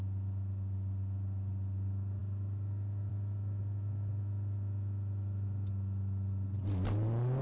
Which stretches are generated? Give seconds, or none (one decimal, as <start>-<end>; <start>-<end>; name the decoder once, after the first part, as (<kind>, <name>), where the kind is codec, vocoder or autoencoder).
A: none